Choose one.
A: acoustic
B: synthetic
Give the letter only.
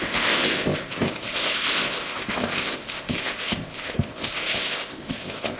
B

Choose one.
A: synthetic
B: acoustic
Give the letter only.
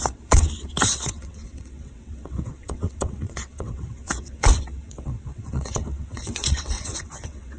A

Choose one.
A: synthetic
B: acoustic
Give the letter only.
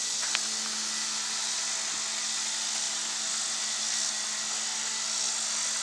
B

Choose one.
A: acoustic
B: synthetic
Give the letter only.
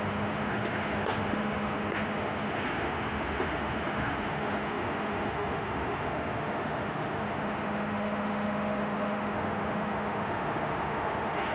B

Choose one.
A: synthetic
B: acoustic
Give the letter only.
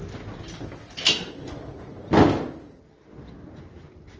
B